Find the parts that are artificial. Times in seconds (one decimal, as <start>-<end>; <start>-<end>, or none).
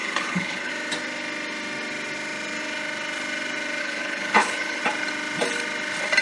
0.0-0.7; 3.8-4.8